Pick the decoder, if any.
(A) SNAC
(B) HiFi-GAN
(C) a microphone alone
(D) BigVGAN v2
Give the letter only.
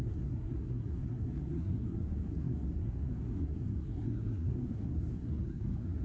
A